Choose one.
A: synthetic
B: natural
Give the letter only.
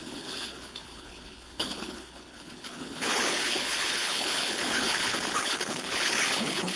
A